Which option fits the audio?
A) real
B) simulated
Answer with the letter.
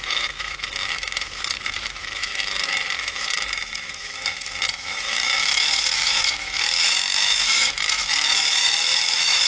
B